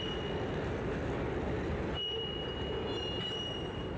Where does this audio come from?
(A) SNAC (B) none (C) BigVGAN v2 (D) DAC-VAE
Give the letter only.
B